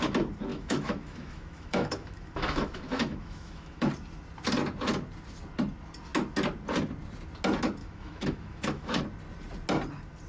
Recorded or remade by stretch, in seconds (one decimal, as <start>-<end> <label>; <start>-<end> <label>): 0.0-0.5 recorded; 0.5-3.9 remade; 3.9-7.8 recorded; 7.8-9.0 remade; 9.0-10.3 recorded